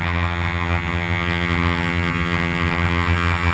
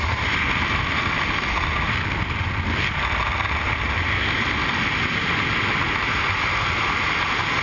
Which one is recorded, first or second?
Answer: second